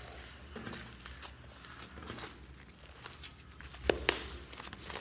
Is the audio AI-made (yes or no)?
no